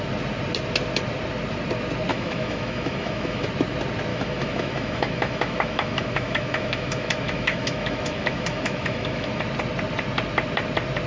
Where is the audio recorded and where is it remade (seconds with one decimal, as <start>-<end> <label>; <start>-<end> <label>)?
0.0-2.1 recorded; 2.1-3.5 remade; 3.5-4.1 recorded; 4.1-9.4 remade; 9.4-11.1 recorded